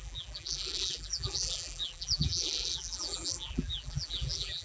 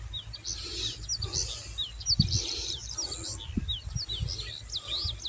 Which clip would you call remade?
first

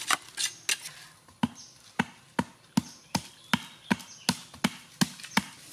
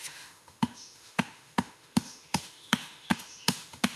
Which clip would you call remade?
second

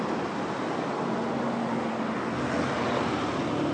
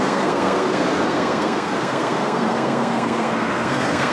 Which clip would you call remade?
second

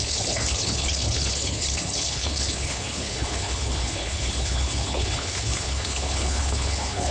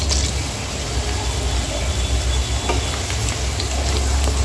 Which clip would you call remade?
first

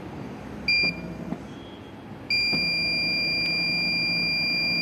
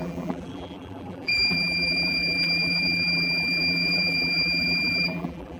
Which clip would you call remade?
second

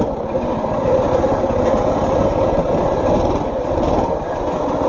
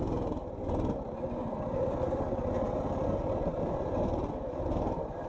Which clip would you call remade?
first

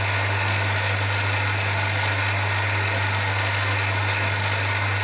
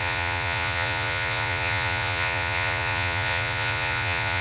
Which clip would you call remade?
second